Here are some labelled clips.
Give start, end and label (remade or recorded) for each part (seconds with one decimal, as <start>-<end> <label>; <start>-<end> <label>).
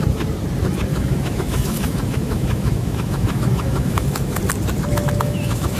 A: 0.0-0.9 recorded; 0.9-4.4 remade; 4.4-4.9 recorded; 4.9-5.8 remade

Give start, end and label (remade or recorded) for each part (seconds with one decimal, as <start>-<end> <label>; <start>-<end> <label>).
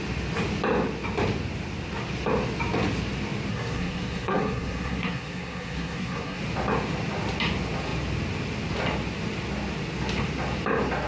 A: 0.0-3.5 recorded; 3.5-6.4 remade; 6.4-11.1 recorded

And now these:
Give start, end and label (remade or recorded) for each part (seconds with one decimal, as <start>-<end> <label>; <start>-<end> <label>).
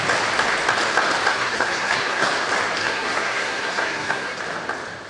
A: 0.0-1.3 recorded; 1.3-2.3 remade; 2.3-2.8 recorded; 2.8-4.4 remade; 4.4-5.1 recorded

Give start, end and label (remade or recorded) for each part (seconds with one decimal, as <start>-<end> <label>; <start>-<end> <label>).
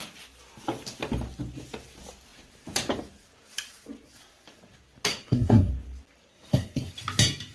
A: 0.0-5.1 recorded; 5.1-5.7 remade; 5.7-6.3 recorded; 6.3-6.9 remade; 6.9-7.5 recorded